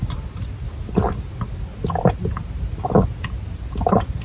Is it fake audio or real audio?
real